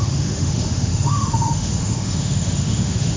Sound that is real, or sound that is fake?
fake